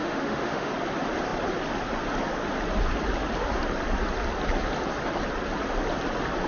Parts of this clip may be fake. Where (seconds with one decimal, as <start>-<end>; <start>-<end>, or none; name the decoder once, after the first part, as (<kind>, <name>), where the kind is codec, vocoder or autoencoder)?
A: 0.0-0.7 (autoencoder, DAC-VAE)